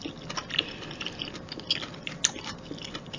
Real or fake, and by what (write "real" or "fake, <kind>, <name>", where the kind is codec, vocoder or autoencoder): fake, vocoder, BigVGAN v2